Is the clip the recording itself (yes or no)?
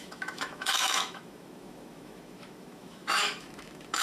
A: no